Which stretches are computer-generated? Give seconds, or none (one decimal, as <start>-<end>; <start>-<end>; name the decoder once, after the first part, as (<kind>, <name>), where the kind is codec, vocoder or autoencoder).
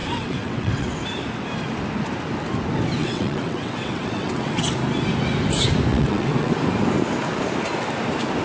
0.0-1.0 (vocoder, WaveNeXt); 3.0-4.6; 5.9-6.5